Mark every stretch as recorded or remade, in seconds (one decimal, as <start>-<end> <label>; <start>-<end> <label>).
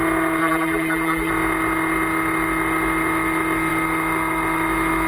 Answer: 0.0-0.4 recorded; 0.4-1.3 remade; 1.3-5.1 recorded